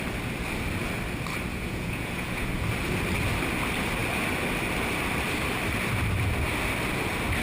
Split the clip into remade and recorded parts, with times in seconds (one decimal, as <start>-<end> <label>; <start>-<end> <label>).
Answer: 0.0-1.5 recorded; 1.5-2.5 remade; 2.5-7.4 recorded

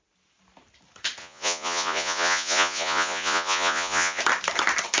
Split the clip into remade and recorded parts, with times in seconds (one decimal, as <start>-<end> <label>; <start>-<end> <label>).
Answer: 0.0-1.2 recorded; 1.2-4.2 remade; 4.2-5.0 recorded

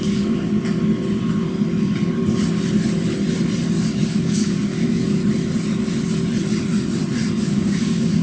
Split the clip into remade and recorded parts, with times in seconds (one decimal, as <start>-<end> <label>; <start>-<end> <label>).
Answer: 0.0-0.4 remade; 0.4-4.1 recorded; 4.1-5.2 remade; 5.2-7.4 recorded; 7.4-8.2 remade

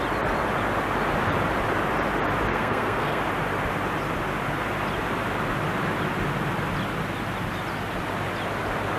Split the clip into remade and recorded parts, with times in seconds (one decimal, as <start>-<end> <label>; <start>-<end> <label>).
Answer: 0.0-2.5 recorded; 2.5-3.2 remade; 3.2-9.0 recorded

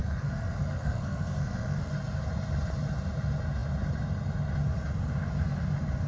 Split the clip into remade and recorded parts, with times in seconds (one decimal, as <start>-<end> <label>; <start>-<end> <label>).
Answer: 0.0-1.9 remade; 1.9-6.1 recorded

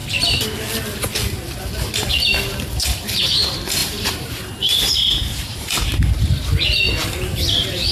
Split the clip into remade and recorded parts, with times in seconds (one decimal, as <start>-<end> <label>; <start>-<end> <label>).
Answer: 0.0-3.8 recorded; 3.8-5.9 remade; 5.9-7.9 recorded

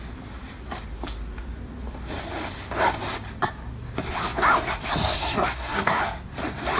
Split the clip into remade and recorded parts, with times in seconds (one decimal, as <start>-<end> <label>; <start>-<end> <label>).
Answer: 0.0-5.2 recorded; 5.2-6.0 remade; 6.0-6.8 recorded